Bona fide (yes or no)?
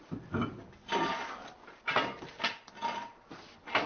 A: yes